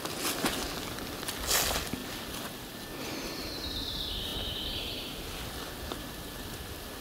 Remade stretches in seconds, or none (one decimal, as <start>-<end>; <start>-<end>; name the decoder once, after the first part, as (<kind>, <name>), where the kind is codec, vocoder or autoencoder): none